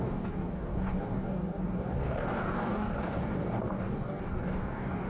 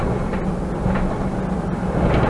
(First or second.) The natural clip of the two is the second